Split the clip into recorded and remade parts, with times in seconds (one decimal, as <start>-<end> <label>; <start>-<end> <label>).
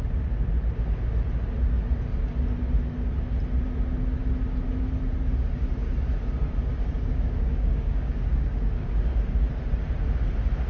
0.0-6.7 recorded; 6.7-9.5 remade; 9.5-10.7 recorded